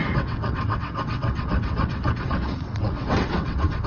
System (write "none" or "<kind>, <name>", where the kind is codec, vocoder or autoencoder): vocoder, WaveNeXt